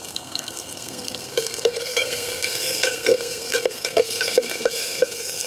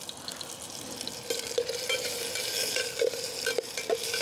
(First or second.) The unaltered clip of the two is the second